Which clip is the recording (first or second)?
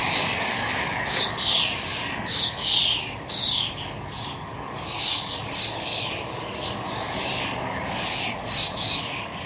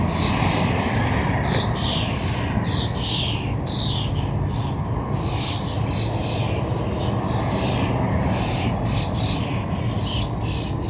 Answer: second